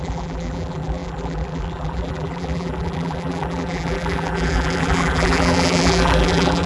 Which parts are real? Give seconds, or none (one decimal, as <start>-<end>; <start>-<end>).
none